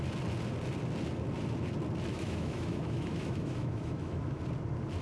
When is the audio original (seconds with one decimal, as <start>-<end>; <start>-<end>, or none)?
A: 0.0-2.1; 4.4-5.0